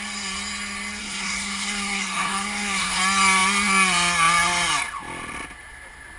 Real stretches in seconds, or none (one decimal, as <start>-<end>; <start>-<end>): 0.0-1.0; 3.0-6.2

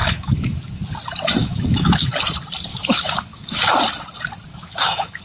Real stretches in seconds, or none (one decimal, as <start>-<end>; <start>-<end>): 0.8-1.4; 2.1-2.7; 3.7-4.5